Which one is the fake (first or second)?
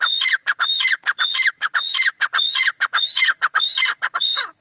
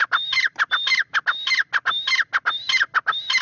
first